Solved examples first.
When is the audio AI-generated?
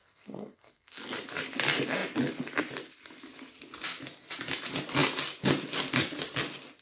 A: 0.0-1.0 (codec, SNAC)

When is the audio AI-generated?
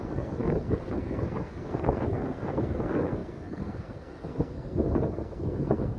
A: 0.0-6.0 (codec, SNAC)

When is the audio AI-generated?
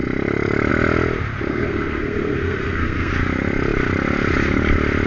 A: 1.5-3.1 (codec, SNAC)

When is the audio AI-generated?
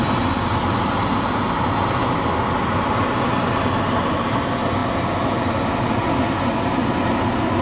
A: none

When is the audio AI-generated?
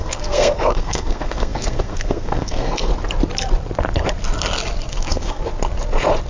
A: 0.0-2.9 (codec, SNAC); 4.9-5.4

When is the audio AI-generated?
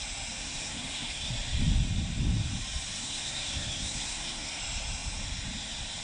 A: 0.4-1.3 (codec, SNAC); 3.0-4.6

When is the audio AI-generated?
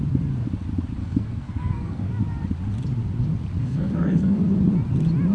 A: 1.0-2.1 (codec, SNAC); 3.6-4.4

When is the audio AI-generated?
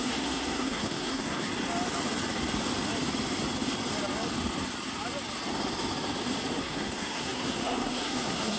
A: 0.0-1.5 (codec, SNAC); 6.6-8.6